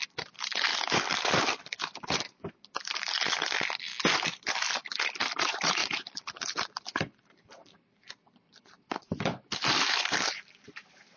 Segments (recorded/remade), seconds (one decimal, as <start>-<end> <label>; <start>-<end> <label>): 0.0-3.9 remade; 3.9-4.5 recorded; 4.5-11.2 remade